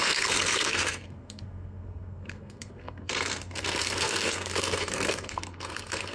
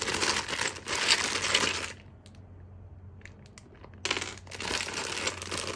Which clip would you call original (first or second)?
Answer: second